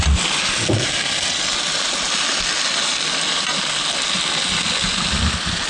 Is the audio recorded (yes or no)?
yes